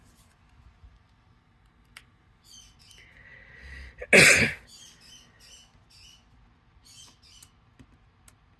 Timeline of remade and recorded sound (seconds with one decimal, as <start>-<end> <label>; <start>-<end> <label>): 0.0-8.6 recorded